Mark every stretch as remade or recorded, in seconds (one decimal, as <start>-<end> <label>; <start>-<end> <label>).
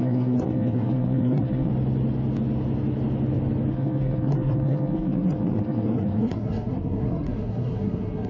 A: 0.0-1.7 remade; 1.7-3.7 recorded; 3.7-8.3 remade